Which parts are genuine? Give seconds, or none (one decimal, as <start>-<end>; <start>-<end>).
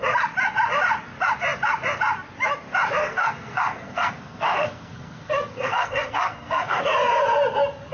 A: 0.0-3.0; 6.8-7.9